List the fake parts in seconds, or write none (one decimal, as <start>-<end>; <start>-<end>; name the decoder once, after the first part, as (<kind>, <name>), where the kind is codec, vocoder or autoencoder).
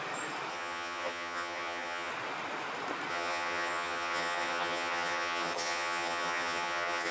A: 0.5-2.1 (vocoder, HiFi-GAN); 3.1-7.1